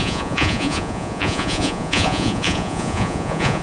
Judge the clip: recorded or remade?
remade